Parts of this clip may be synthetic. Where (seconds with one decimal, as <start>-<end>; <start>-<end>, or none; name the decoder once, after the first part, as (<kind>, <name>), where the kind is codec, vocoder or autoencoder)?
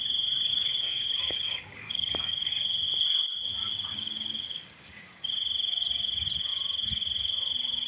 0.5-2.5 (codec, DAC); 3.6-5.3